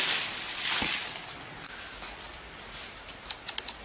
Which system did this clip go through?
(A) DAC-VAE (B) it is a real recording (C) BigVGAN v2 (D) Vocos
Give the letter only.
B